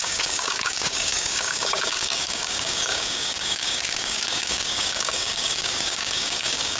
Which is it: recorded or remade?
remade